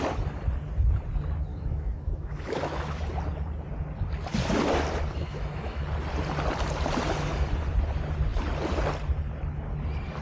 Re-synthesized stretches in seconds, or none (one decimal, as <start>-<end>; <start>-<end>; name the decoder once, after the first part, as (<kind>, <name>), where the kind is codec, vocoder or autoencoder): 1.5-3.1 (autoencoder, DAC-VAE); 5.2-5.8